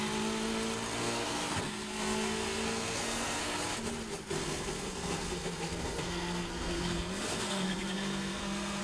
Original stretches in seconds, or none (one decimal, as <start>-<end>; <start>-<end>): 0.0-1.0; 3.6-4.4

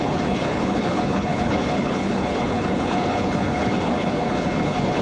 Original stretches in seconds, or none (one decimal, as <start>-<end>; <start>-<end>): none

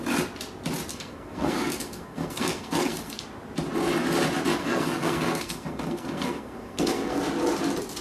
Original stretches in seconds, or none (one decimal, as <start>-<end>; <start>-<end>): 0.0-0.9; 3.2-4.6; 7.2-8.0

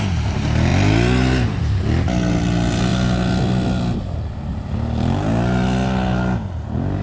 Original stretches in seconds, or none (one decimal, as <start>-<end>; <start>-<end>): 0.0-7.0

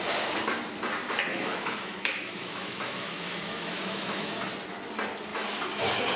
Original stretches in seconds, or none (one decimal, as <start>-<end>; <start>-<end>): 0.0-1.3; 4.3-6.2

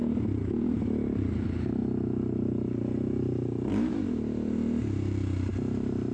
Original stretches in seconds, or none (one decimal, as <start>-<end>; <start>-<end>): 1.8-3.7

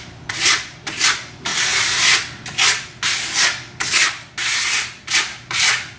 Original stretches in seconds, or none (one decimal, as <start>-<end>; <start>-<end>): 1.5-5.1